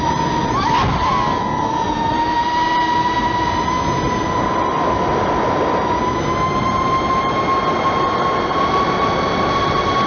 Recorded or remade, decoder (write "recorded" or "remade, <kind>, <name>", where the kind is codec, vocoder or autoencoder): recorded